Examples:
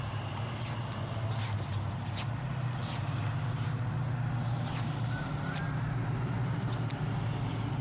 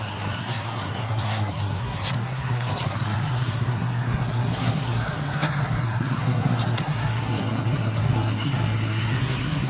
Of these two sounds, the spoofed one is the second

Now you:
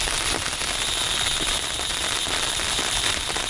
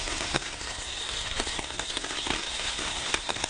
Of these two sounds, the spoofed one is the second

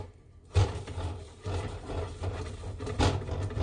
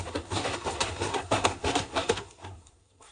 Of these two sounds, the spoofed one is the second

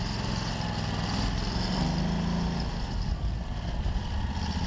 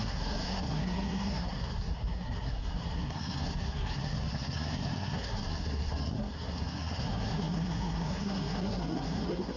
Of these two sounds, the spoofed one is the second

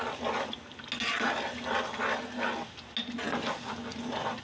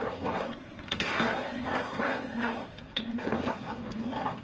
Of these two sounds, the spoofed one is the second